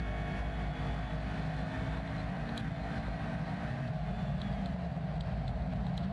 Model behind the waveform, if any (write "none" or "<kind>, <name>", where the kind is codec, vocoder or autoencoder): none